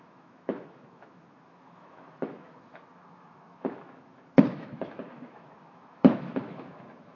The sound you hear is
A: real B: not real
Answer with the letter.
B